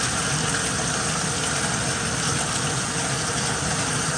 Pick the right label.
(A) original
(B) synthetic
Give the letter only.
A